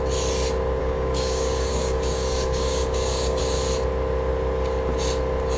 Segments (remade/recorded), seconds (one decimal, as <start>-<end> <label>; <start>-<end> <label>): 0.0-0.8 recorded; 0.8-3.4 remade; 3.4-5.6 recorded